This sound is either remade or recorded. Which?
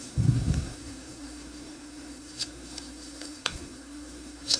remade